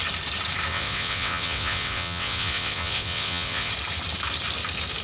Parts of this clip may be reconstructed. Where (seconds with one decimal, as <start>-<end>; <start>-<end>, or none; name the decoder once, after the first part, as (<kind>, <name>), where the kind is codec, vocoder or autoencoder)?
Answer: 0.7-3.7 (vocoder, WaveNeXt)